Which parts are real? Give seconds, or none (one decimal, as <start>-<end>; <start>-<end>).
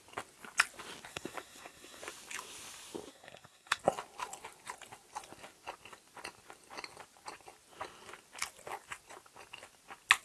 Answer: 0.0-1.1; 2.0-3.1; 3.8-10.2